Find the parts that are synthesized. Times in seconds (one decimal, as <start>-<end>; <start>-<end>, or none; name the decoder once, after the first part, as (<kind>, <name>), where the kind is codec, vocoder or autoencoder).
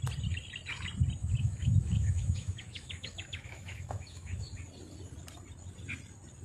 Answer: 1.2-4.5 (autoencoder, DAC-VAE)